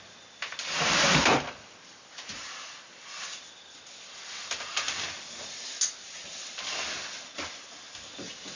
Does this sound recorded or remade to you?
recorded